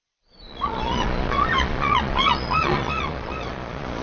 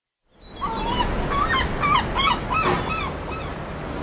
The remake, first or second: first